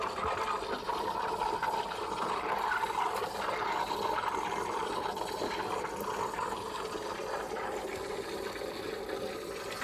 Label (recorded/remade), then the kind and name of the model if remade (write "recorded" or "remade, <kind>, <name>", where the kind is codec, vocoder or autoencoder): recorded